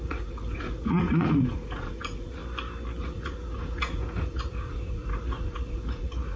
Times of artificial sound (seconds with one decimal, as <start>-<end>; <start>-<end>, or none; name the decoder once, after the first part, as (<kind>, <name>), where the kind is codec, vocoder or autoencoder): 0.0-2.4 (vocoder, Vocos); 3.0-6.4